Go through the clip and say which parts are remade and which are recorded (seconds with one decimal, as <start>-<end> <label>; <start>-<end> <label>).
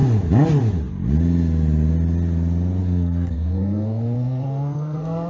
0.0-2.8 recorded; 2.8-5.3 remade